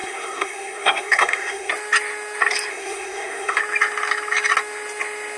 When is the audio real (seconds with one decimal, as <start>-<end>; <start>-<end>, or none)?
1.7-2.7; 3.6-5.4